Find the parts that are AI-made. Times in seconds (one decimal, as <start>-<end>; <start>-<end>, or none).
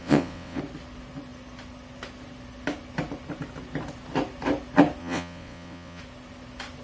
0.0-0.6; 5.0-6.0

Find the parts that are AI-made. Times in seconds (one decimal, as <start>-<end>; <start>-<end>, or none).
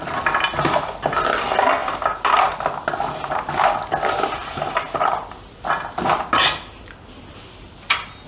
none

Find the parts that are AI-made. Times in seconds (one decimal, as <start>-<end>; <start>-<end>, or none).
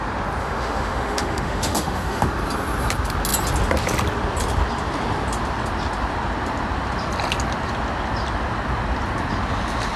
0.4-2.3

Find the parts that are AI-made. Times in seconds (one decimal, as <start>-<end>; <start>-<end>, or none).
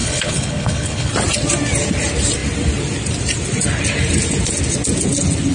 0.0-1.1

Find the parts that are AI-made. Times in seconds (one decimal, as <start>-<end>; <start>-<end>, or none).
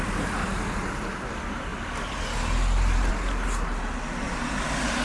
none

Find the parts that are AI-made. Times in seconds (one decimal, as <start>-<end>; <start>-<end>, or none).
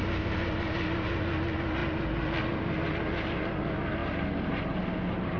4.0-5.4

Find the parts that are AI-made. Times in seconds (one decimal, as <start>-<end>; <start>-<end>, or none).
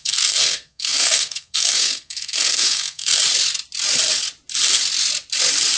0.0-3.2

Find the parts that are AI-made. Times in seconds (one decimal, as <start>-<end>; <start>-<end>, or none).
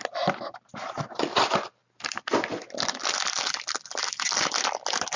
none